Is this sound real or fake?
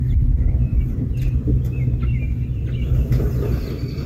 real